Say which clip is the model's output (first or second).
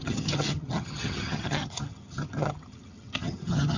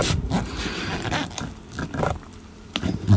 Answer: first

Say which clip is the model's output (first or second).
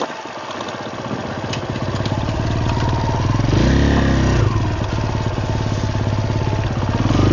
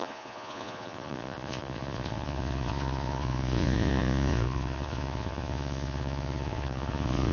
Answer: second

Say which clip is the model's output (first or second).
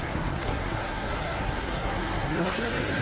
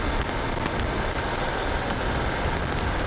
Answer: first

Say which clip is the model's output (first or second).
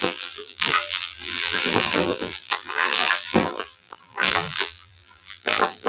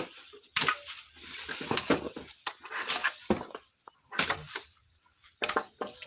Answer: first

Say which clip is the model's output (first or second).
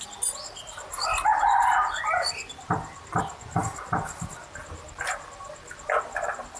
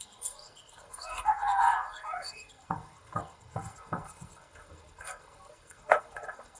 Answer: second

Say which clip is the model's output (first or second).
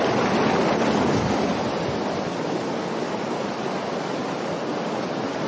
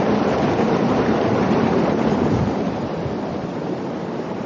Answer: second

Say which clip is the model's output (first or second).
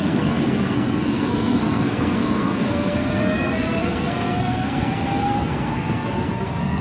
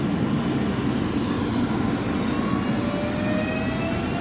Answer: first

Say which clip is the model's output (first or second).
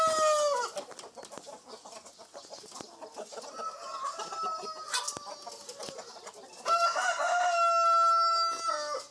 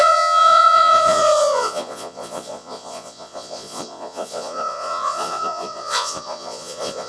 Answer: second